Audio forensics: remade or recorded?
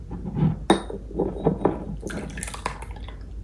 recorded